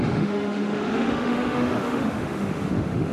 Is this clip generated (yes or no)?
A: yes